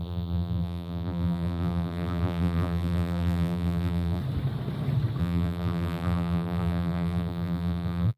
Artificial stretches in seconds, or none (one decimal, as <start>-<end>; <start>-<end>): 0.0-4.2; 5.2-8.2